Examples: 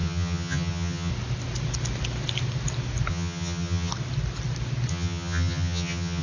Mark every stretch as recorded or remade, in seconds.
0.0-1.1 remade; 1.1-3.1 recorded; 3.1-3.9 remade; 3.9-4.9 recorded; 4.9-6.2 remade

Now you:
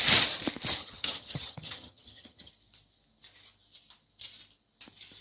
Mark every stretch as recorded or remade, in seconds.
0.0-0.8 recorded; 0.8-2.5 remade; 2.5-5.2 recorded

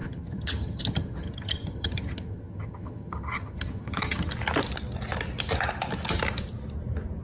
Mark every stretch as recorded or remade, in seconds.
0.0-4.3 remade; 4.3-7.2 recorded

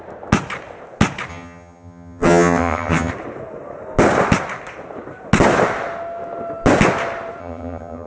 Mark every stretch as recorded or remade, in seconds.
0.0-1.3 recorded; 1.3-3.1 remade; 3.1-7.4 recorded; 7.4-8.1 remade

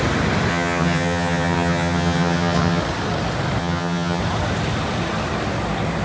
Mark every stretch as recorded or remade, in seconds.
0.0-0.5 recorded; 0.5-2.8 remade; 2.8-3.6 recorded; 3.6-4.2 remade; 4.2-6.0 recorded

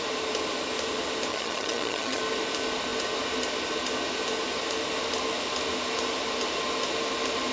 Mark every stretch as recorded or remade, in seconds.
0.0-1.3 recorded; 1.3-2.2 remade; 2.2-7.5 recorded